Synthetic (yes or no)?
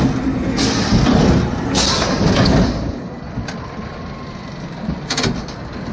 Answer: no